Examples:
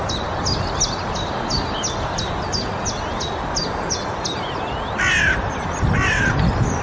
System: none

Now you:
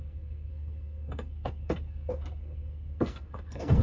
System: codec, SNAC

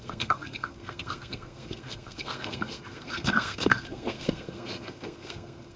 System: codec, SNAC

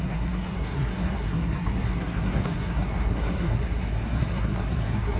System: codec, SNAC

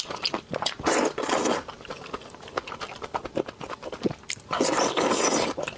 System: none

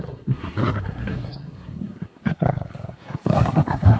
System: codec, SNAC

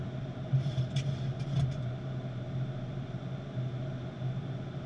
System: none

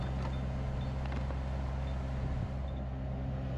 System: none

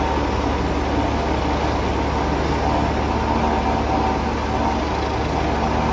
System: none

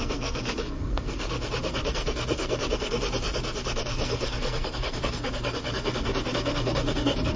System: codec, SNAC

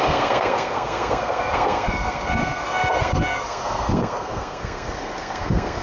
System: codec, SNAC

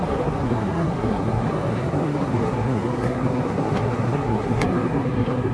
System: codec, SNAC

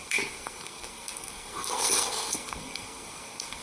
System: codec, SNAC